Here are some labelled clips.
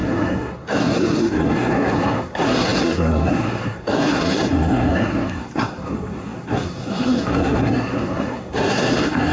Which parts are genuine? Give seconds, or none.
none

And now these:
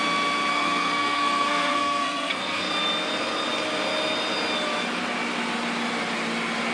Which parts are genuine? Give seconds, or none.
0.0-0.5; 2.7-6.7

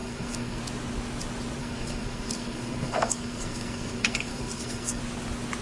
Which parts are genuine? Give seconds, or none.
0.6-1.6; 5.0-5.6

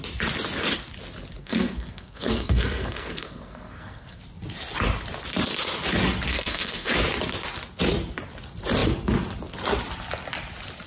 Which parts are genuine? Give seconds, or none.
0.0-1.4; 4.2-6.3; 6.9-10.9

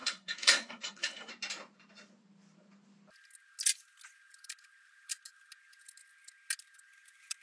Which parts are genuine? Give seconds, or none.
1.3-7.4

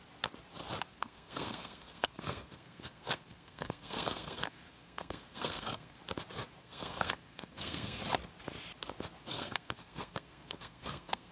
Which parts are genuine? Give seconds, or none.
0.0-0.9; 6.0-6.6; 8.0-9.3